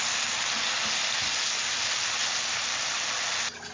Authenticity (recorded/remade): recorded